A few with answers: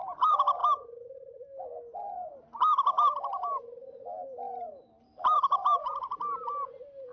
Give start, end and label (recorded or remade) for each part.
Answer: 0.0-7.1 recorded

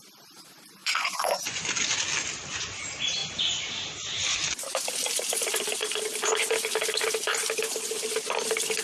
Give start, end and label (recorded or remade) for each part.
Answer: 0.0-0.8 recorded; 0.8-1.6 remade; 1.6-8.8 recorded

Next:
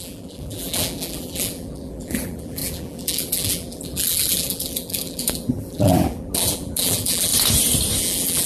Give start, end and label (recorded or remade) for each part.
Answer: 0.0-7.3 remade; 7.3-8.0 recorded; 8.0-8.5 remade